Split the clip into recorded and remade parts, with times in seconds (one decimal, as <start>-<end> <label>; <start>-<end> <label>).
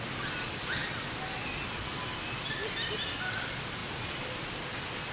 0.0-5.1 recorded